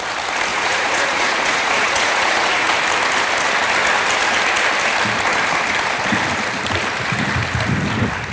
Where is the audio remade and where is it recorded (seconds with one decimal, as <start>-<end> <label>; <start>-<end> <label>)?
0.0-0.5 recorded; 0.5-2.7 remade; 2.7-8.3 recorded